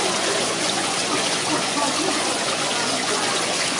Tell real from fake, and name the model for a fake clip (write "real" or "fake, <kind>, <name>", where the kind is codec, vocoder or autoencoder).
fake, vocoder, Vocos